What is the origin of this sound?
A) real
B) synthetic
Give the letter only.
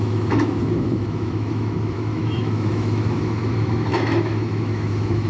B